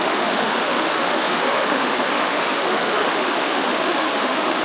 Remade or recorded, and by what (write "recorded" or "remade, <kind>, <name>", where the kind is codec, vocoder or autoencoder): remade, autoencoder, DAC-VAE